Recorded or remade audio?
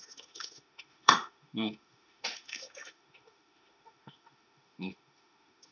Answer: remade